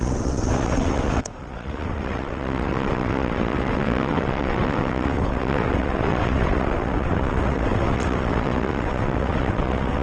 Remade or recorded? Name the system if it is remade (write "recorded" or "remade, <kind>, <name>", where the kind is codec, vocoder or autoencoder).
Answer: remade, vocoder, WaveNeXt